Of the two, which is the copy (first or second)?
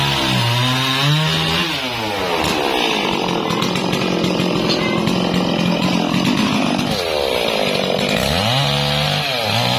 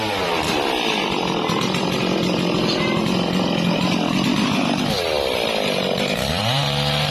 second